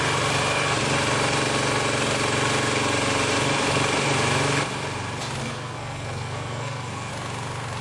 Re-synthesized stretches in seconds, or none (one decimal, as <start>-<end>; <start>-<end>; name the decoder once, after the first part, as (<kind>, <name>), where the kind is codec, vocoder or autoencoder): 5.4-7.1 (codec, SNAC)